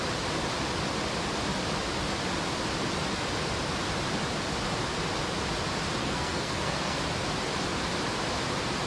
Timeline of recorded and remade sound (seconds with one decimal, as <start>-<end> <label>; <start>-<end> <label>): 0.0-6.0 recorded; 6.0-7.0 remade; 7.0-8.9 recorded